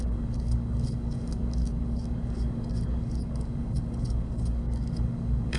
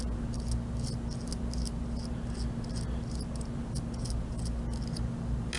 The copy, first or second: first